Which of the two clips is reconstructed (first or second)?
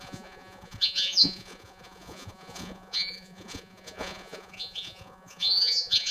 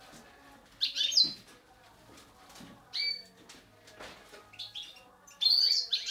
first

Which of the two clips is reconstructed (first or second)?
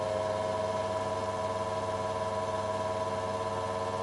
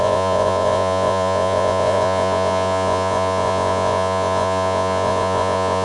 second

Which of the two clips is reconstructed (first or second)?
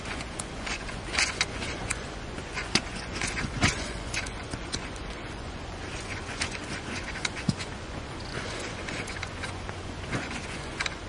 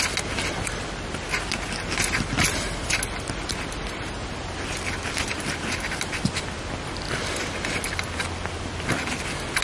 first